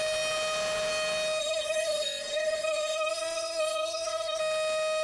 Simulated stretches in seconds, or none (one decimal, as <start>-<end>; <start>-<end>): 1.4-4.4